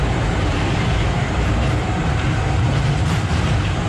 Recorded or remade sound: remade